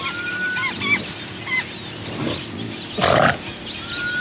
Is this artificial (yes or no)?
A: no